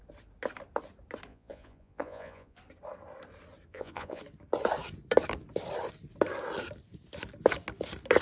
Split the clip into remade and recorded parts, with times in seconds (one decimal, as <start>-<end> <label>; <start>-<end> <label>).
0.0-1.3 recorded; 1.3-2.6 remade; 2.6-3.7 recorded; 3.7-4.2 remade; 4.2-8.2 recorded